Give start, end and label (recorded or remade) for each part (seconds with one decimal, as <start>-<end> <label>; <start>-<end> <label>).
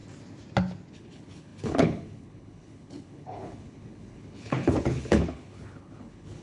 0.0-0.9 recorded; 0.9-6.4 remade